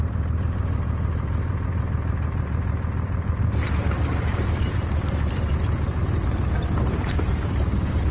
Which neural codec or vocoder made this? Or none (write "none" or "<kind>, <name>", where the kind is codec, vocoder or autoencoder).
vocoder, BigVGAN v2